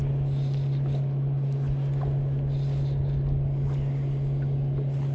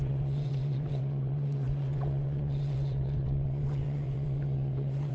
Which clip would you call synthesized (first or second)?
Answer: second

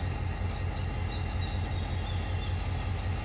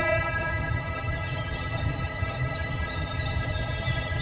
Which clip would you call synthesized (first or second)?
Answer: second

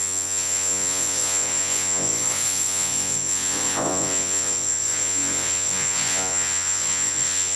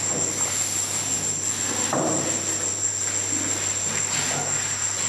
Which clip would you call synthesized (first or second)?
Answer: first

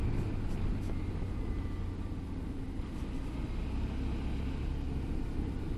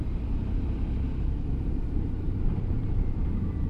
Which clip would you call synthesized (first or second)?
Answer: second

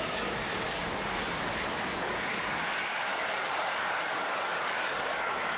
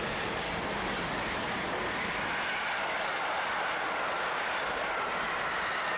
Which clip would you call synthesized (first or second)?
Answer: first